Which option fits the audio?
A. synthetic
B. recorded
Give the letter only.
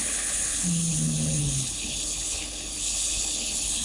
A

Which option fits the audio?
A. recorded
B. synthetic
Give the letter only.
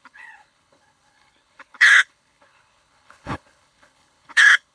B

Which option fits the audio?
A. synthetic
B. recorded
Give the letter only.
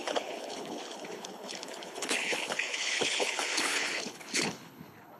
A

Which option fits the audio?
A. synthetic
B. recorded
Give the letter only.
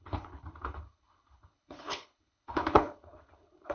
A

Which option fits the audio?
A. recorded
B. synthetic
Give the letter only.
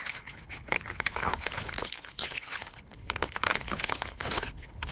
B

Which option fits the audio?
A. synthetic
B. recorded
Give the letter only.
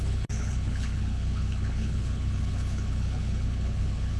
A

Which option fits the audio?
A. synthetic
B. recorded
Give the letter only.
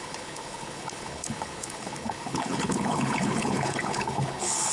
A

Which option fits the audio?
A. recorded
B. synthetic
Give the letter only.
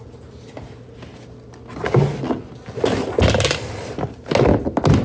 A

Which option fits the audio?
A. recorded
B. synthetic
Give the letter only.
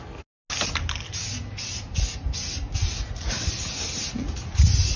A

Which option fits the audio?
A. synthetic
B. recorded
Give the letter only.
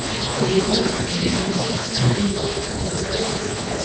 A